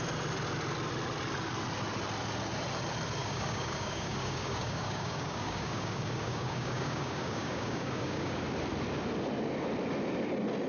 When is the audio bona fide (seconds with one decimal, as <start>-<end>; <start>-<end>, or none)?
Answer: 0.0-3.2; 8.4-10.7